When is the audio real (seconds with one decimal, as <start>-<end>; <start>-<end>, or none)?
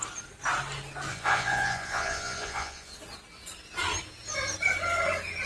0.0-1.1; 2.9-5.5